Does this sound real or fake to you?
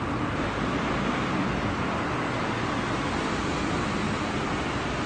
real